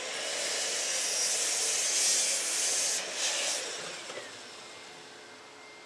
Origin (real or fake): real